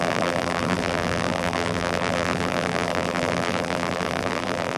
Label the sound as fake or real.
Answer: fake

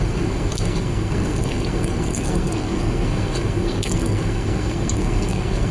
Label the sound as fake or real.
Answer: fake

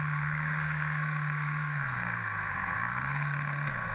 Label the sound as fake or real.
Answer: fake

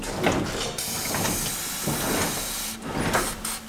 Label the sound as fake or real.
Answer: real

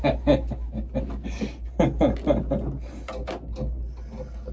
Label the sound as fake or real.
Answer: real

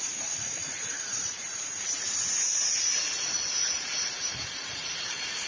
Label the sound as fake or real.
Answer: fake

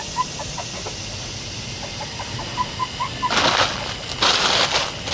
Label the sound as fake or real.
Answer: fake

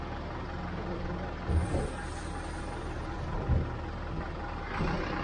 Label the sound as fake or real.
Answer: real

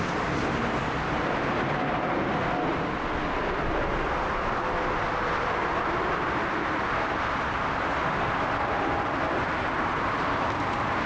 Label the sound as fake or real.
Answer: real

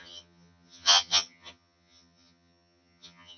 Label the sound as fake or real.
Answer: fake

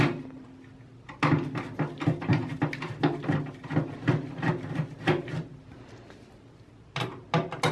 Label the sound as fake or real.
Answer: real